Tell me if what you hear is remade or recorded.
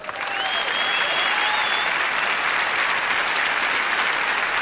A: recorded